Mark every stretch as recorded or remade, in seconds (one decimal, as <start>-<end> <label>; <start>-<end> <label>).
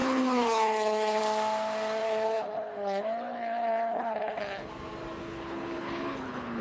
0.0-1.2 remade; 1.2-2.0 recorded; 2.0-4.7 remade; 4.7-5.2 recorded; 5.2-6.6 remade